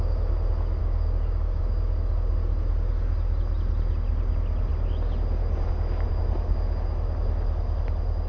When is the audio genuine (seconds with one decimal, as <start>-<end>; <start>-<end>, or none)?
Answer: 0.0-0.8; 1.6-8.3